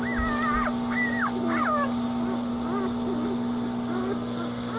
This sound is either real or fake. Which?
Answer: real